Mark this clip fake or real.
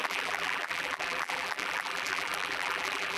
fake